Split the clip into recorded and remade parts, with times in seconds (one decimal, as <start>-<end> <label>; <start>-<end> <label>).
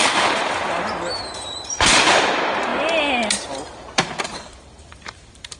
0.0-2.7 remade; 2.7-3.6 recorded; 3.6-5.6 remade